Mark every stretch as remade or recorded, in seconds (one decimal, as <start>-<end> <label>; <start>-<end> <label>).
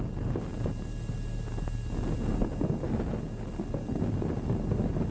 0.0-5.1 recorded